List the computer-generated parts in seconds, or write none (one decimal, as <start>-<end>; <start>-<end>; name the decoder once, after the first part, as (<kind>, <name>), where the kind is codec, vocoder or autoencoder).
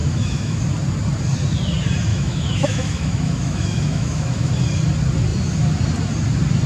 0.0-0.6 (autoencoder, DAC-VAE); 2.1-4.5